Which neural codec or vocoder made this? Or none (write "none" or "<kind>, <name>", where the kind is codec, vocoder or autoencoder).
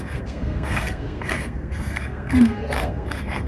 codec, SNAC